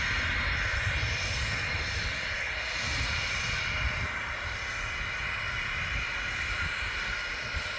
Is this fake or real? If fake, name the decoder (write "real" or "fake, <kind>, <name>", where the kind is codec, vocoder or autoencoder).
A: real